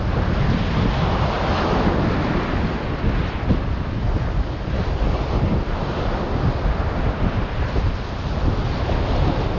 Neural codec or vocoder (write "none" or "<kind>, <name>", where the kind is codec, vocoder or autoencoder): none